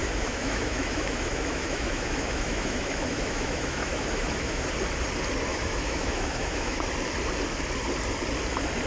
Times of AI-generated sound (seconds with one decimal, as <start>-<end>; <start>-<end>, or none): 0.0-4.7; 5.5-6.9